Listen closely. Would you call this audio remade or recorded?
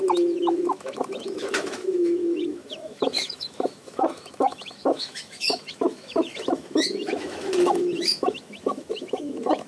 remade